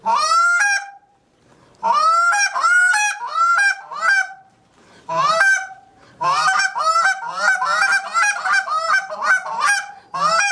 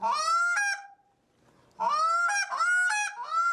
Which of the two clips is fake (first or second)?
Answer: first